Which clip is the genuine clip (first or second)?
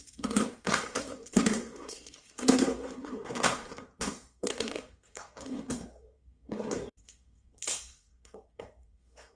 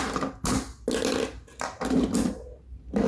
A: second